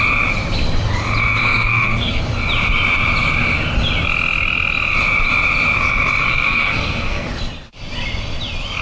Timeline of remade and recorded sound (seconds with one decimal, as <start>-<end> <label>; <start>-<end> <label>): 0.0-1.4 recorded; 1.4-2.2 remade; 2.2-6.3 recorded; 6.3-7.3 remade; 7.3-8.8 recorded